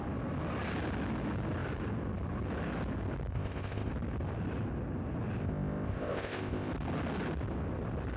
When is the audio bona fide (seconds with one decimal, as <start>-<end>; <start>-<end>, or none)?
0.0-3.3; 3.9-5.4; 6.7-8.2